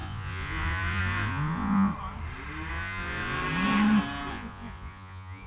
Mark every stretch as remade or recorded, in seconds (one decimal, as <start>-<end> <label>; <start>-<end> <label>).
0.0-1.9 remade; 1.9-2.7 recorded; 2.7-3.4 remade; 3.4-4.3 recorded; 4.3-5.5 remade